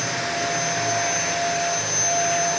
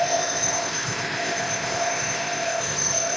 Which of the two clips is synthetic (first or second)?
second